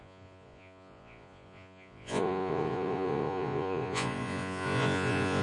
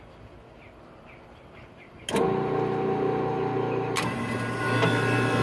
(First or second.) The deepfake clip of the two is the first